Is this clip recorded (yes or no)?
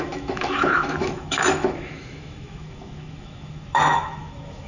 no